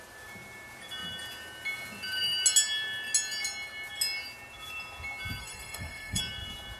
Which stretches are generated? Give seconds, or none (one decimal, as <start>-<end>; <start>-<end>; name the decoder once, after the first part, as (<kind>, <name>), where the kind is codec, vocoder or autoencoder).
5.4-6.2 (codec, SNAC)